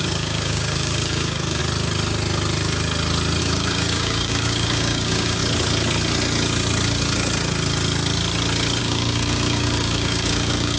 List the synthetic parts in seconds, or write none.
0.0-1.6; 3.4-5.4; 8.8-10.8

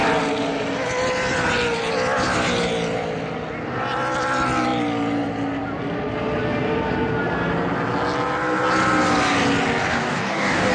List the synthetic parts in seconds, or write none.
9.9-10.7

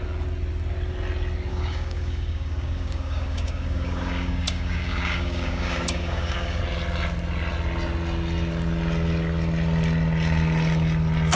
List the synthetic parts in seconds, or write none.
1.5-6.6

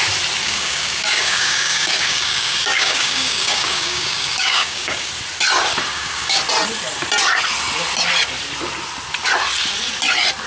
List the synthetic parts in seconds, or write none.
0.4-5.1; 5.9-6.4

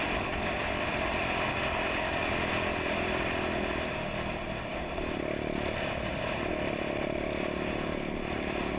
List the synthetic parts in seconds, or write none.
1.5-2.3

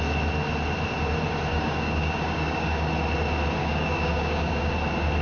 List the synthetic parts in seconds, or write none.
1.5-2.9; 3.6-4.7

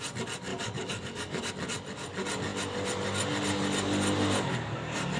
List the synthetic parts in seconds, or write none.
0.5-1.5